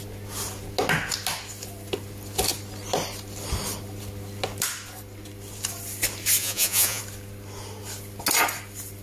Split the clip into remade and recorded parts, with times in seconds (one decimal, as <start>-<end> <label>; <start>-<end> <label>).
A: 0.0-6.4 recorded; 6.4-7.0 remade; 7.0-9.0 recorded